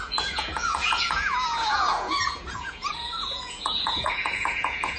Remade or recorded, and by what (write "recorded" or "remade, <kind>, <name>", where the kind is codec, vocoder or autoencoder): remade, vocoder, Vocos